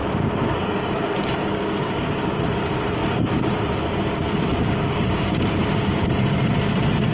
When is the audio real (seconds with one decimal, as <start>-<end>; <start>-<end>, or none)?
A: 2.4-3.0; 3.6-4.5; 6.1-7.1